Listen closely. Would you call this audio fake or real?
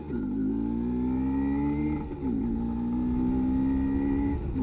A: real